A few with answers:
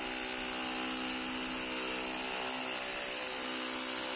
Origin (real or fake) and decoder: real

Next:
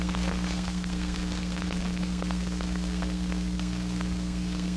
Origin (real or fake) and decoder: fake, codec, SNAC